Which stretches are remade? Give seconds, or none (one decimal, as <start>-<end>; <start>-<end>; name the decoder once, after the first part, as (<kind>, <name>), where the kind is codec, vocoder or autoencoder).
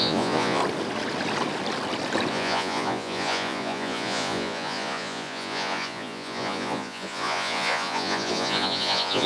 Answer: 0.0-0.6 (vocoder, Vocos); 2.3-9.3